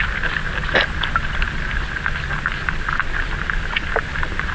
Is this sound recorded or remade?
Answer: recorded